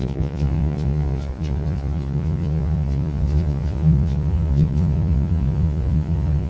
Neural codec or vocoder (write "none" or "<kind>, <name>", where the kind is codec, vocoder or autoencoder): vocoder, Vocos